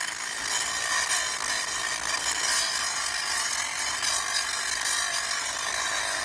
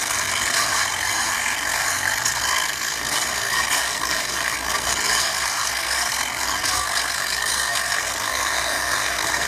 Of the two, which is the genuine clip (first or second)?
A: first